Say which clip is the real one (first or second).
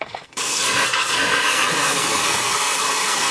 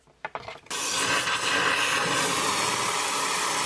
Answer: second